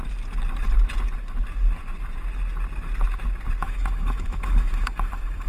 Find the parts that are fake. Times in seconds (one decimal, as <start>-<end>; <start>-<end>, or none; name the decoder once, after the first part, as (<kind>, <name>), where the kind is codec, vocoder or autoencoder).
3.6-5.5 (autoencoder, DAC-VAE)